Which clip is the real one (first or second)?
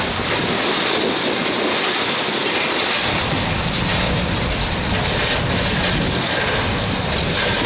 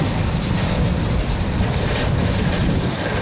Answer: first